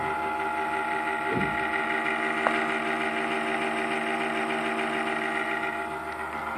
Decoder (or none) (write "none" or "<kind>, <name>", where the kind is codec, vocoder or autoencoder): vocoder, BigVGAN v2